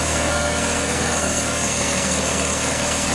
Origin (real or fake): fake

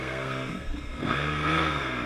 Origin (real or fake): fake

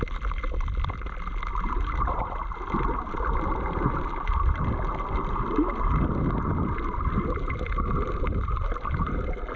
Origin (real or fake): real